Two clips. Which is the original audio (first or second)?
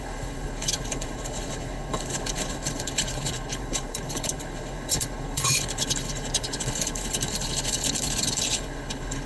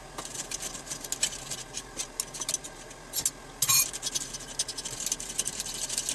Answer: second